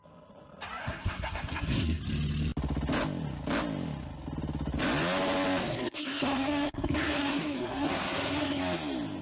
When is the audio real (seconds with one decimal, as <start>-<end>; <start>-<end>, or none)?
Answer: 0.0-0.8; 2.0-5.6; 8.6-9.2